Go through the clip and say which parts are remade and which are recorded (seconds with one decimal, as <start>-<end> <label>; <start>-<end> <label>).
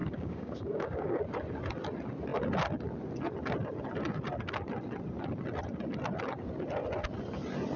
0.0-1.2 remade; 1.2-7.8 recorded